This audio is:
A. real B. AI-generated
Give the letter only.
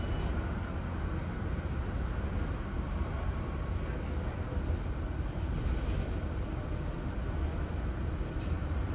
A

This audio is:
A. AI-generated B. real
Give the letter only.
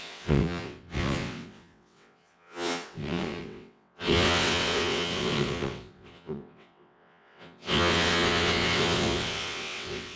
A